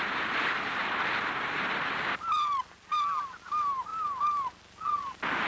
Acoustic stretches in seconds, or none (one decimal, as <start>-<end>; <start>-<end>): 0.0-5.5